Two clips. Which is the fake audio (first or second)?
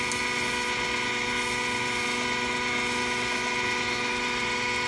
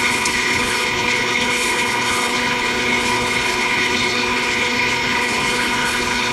second